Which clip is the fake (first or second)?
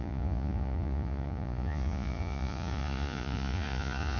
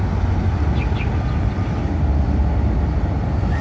first